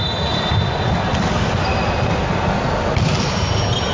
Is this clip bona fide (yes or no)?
yes